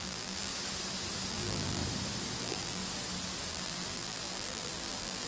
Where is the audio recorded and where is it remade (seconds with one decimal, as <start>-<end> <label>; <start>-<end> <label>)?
0.0-0.5 remade; 0.5-1.3 recorded; 1.3-1.8 remade; 1.8-2.4 recorded; 2.4-2.8 remade; 2.8-3.5 recorded; 3.5-5.3 remade

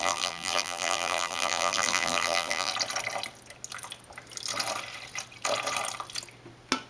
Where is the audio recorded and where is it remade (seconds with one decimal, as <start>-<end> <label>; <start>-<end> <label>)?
0.0-2.7 remade; 2.7-6.9 recorded

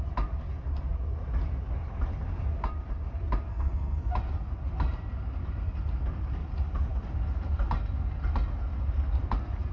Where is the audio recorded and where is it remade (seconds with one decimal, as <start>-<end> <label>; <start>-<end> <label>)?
0.0-3.5 recorded; 3.5-4.1 remade; 4.1-9.7 recorded

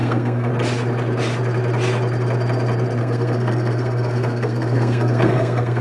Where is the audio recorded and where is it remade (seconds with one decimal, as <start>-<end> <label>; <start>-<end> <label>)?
0.0-0.5 remade; 0.5-3.0 recorded; 3.0-5.8 remade

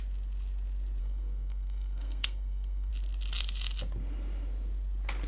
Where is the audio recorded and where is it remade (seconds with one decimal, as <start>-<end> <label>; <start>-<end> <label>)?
0.0-1.0 recorded; 1.0-2.9 remade; 2.9-5.3 recorded

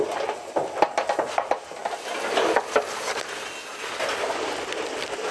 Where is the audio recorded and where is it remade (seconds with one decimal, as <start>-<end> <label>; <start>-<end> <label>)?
0.0-5.3 recorded

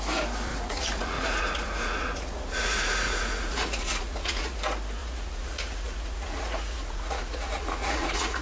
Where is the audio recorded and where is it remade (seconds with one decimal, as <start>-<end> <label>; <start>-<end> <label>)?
0.0-0.5 recorded; 0.5-4.6 remade; 4.6-5.0 recorded; 5.0-8.4 remade

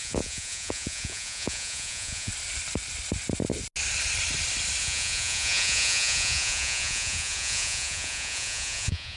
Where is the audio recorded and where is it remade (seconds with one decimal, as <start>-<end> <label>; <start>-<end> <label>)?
0.0-2.3 remade; 2.3-4.8 recorded; 4.8-9.2 remade